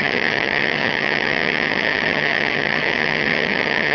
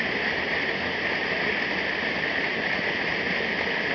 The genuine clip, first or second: second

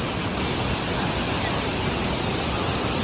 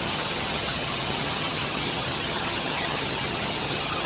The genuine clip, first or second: first